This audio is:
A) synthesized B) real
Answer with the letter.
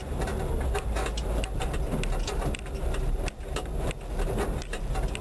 B